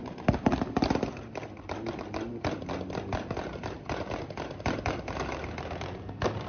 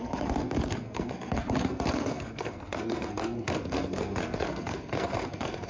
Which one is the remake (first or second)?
second